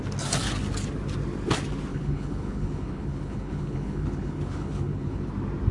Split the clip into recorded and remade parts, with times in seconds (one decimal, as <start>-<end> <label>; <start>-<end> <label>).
0.0-1.9 recorded; 1.9-5.3 remade; 5.3-5.7 recorded